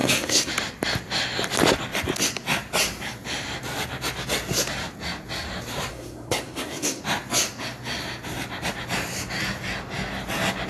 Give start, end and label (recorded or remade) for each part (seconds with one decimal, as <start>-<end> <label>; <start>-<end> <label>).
0.0-0.5 remade; 0.5-5.9 recorded; 5.9-7.0 remade; 7.0-10.7 recorded